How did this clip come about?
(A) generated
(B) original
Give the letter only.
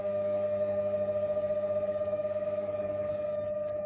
A